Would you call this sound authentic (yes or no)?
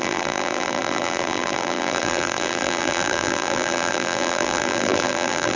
no